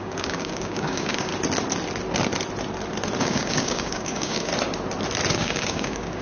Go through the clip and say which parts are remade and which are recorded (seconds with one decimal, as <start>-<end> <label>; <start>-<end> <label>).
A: 0.0-1.3 remade; 1.3-3.2 recorded; 3.2-4.5 remade; 4.5-5.3 recorded; 5.3-6.2 remade

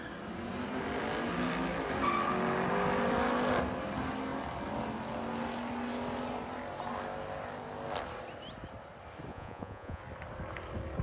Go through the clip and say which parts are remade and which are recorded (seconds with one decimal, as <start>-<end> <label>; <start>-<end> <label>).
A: 0.0-9.3 recorded; 9.3-10.0 remade; 10.0-11.0 recorded

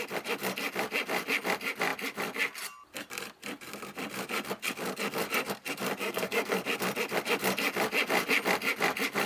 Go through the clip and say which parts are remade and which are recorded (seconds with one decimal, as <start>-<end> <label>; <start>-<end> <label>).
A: 0.0-6.0 recorded; 6.0-6.6 remade; 6.6-9.3 recorded

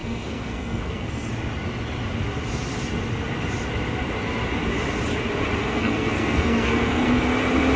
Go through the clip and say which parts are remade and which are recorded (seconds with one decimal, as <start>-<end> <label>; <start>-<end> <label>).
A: 0.0-1.3 remade; 1.3-5.6 recorded; 5.6-7.2 remade; 7.2-7.8 recorded

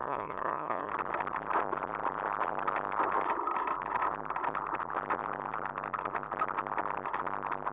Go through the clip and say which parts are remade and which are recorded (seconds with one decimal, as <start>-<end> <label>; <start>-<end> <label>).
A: 0.0-0.9 remade; 0.9-7.7 recorded

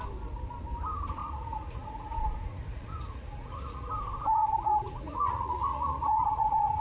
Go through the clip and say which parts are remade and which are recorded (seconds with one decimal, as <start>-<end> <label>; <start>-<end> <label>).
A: 0.0-1.2 recorded; 1.2-3.9 remade; 3.9-4.3 recorded; 4.3-6.8 remade